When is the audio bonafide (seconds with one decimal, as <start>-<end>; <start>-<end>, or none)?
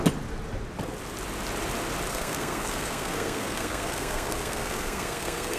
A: 0.0-2.1